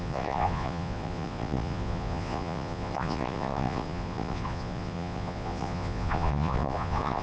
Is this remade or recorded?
remade